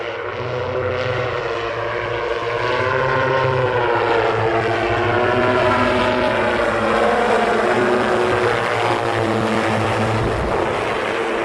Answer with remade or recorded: recorded